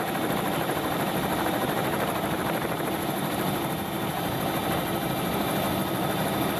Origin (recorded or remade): remade